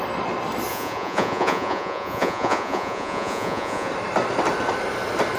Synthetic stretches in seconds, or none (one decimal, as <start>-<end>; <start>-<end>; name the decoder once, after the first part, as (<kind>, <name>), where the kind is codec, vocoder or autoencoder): 0.7-3.9 (vocoder, Vocos)